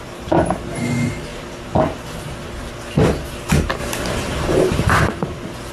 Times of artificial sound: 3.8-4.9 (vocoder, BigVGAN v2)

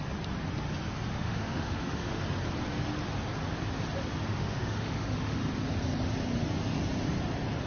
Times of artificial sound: 1.1-2.2 (autoencoder, DAC-VAE); 4.3-5.4

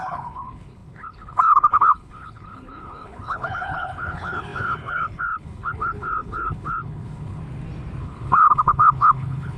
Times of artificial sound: 0.0-7.4 (codec, HILCodec); 8.0-9.6

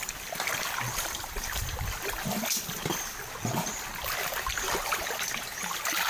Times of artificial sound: 0.0-3.7 (vocoder, BigVGAN v2)

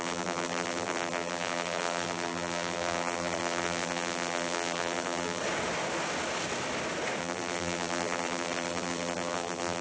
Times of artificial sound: 0.0-5.4 (vocoder, BigVGAN v2); 7.2-9.8

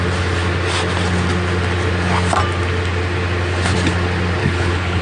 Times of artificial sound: 4.4-5.0 (codec, HILCodec)

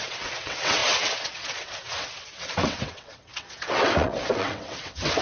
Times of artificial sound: 0.0-5.2 (vocoder, WaveNeXt)